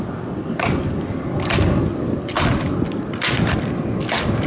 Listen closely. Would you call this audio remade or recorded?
recorded